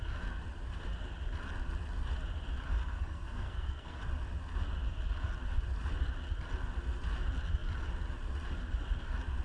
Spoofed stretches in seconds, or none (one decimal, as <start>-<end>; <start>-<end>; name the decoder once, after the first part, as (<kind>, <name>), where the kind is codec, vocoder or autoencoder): 2.8-4.0 (codec, SNAC)